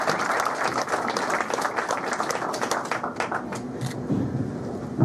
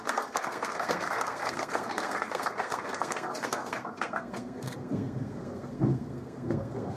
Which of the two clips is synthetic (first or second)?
second